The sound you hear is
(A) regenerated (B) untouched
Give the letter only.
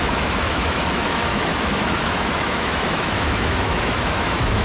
A